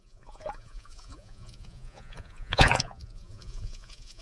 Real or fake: fake